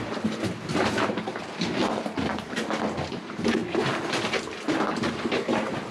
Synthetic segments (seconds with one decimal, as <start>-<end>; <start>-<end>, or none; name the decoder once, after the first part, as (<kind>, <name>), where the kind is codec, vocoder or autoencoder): 0.0-3.6 (vocoder, BigVGAN v2); 4.7-5.9